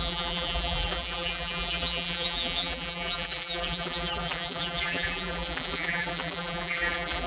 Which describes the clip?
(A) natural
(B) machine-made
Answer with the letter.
B